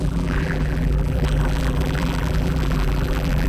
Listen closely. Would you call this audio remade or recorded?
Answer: remade